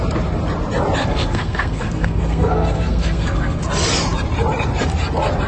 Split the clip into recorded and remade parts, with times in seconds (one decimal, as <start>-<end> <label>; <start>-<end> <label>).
0.0-1.0 recorded; 1.0-3.6 remade; 3.6-5.5 recorded